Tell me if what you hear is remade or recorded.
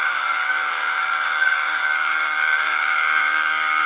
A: remade